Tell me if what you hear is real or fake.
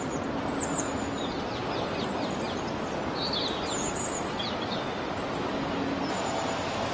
real